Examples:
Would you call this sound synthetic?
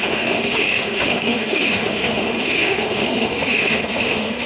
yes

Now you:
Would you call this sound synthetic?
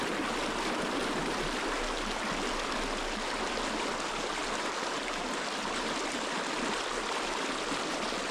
no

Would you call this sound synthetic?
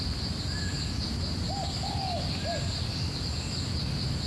no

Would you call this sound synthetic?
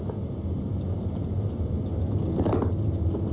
no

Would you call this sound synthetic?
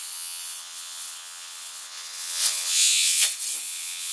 yes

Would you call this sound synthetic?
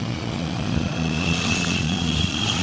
yes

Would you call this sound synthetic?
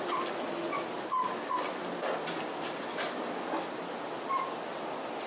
no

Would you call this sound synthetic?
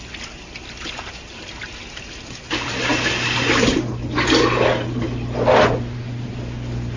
no